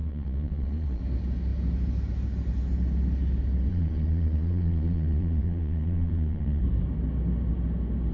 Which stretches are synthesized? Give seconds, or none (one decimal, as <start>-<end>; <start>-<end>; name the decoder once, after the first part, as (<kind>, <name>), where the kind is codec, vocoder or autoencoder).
0.0-1.0 (vocoder, Vocos); 3.7-6.6